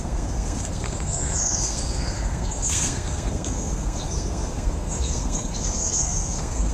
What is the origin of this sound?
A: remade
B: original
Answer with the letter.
A